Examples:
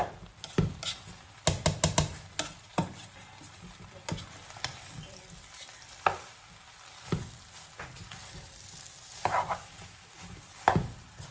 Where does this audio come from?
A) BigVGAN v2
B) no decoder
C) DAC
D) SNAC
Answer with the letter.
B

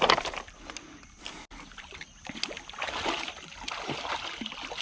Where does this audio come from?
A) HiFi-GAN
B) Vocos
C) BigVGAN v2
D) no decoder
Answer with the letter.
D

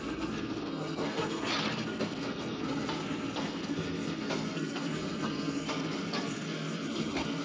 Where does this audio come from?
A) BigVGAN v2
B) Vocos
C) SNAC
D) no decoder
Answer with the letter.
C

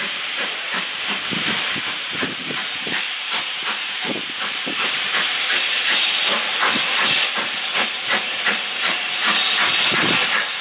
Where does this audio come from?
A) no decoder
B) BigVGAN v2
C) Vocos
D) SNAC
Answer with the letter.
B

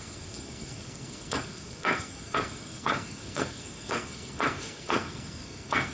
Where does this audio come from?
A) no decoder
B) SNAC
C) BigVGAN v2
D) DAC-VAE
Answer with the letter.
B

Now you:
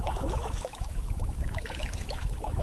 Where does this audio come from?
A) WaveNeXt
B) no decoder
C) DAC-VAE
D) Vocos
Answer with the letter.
C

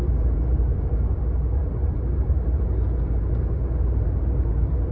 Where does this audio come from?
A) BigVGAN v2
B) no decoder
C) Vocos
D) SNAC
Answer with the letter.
A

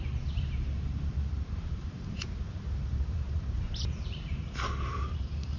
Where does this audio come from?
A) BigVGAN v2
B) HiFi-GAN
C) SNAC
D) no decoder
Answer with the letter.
A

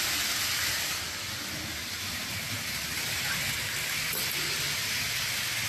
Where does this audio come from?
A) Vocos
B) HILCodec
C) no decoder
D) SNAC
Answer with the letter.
C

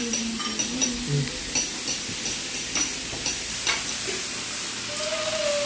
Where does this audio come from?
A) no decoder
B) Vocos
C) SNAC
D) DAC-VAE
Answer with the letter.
A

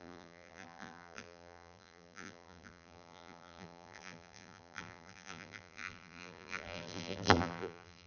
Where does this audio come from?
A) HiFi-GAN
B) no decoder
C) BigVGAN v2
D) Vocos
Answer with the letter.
C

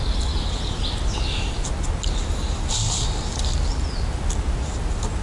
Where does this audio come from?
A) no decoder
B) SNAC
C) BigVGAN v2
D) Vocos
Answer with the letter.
A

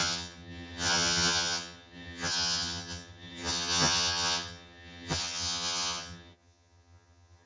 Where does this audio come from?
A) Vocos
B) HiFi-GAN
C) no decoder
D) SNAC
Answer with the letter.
B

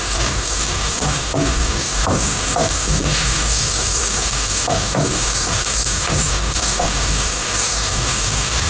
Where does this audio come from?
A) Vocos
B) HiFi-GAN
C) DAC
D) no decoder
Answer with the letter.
C